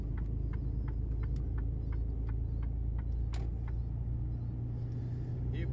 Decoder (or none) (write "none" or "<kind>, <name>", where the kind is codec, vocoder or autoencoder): none